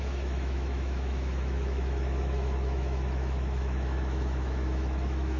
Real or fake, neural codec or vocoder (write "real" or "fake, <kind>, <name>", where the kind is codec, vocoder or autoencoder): fake, autoencoder, DAC-VAE